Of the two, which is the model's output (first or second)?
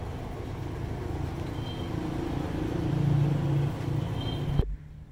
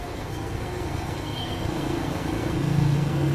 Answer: second